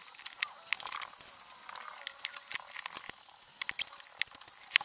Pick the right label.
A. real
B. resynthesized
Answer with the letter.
A